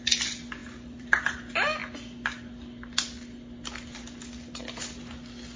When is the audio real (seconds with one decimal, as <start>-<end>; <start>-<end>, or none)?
0.0-0.6; 1.2-5.6